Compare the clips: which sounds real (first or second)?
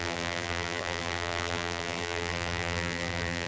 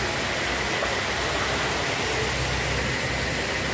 second